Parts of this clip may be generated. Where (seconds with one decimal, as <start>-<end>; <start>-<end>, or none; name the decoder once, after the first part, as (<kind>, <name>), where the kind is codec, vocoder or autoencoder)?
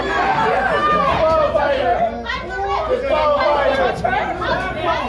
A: none